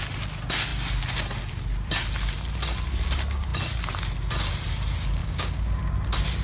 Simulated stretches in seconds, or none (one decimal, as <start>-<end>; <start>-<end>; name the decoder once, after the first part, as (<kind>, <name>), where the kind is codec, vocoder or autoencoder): 5.2-5.8 (codec, DAC)